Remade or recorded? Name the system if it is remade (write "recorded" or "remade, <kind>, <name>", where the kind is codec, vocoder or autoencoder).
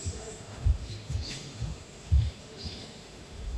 remade, autoencoder, DAC-VAE